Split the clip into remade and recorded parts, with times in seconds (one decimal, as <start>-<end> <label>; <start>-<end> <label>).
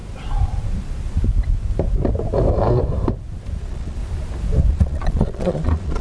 0.0-3.6 recorded; 3.6-4.0 remade; 4.0-4.7 recorded; 4.7-6.0 remade